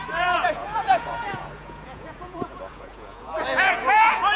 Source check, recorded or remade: remade